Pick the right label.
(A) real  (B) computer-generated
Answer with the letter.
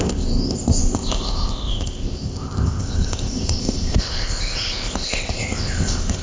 B